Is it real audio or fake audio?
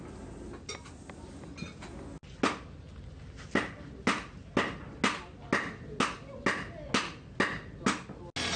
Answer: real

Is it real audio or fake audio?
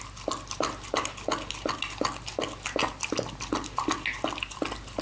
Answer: real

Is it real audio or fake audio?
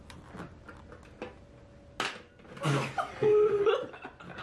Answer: real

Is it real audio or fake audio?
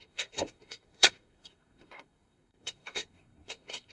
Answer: fake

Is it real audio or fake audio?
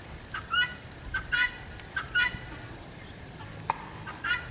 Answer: real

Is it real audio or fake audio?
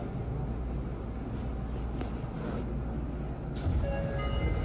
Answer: real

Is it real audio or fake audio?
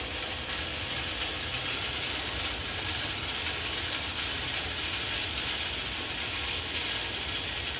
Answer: real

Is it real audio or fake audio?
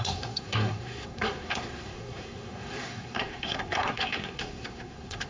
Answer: fake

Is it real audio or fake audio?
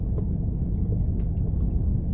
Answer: real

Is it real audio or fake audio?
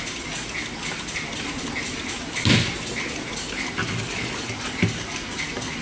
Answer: real